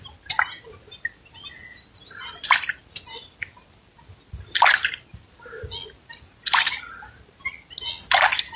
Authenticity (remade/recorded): recorded